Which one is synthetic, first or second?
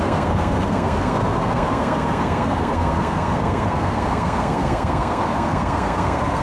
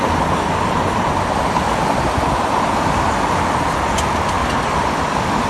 first